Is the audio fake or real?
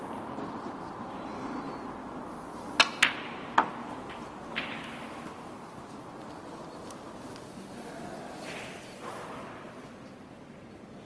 real